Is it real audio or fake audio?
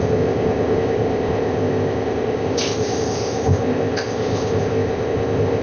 fake